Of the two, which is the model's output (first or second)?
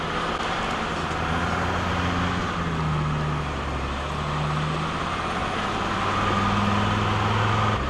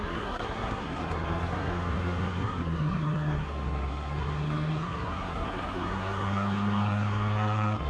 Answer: second